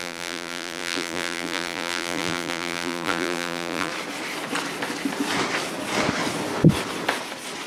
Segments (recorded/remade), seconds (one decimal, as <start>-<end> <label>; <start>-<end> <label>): 0.0-3.9 remade; 3.9-7.7 recorded